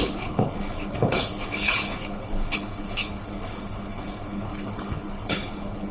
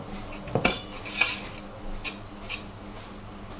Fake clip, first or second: first